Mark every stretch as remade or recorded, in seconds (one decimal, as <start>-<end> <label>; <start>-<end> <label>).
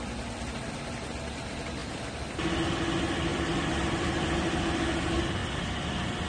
0.0-1.8 recorded; 1.8-2.7 remade; 2.7-3.3 recorded; 3.3-4.6 remade; 4.6-5.4 recorded; 5.4-6.3 remade